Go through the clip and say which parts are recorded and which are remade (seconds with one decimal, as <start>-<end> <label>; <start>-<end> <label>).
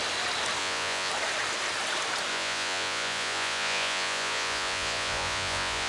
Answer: 0.0-0.6 recorded; 0.6-1.1 remade; 1.1-2.3 recorded; 2.3-5.9 remade